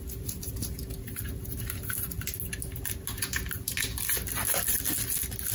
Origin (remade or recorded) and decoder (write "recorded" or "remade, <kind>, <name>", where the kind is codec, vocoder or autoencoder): recorded